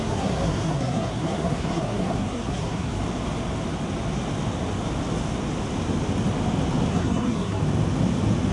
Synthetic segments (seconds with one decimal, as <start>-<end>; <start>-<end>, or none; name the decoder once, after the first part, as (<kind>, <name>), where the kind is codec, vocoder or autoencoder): 0.0-3.0 (codec, SNAC); 6.9-7.6